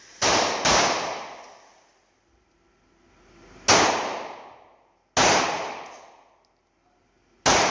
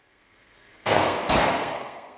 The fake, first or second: second